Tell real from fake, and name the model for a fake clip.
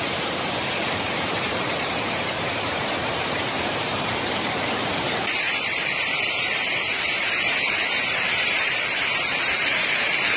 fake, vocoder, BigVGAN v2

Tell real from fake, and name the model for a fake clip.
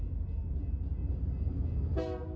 real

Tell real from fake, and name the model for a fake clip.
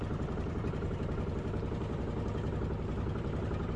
fake, vocoder, BigVGAN v2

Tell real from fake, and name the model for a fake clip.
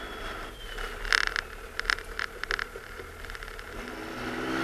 real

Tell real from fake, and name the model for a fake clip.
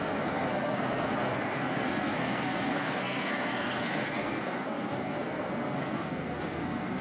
fake, codec, SNAC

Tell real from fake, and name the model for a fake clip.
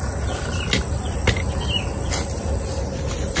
real